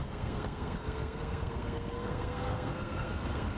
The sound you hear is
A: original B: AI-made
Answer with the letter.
B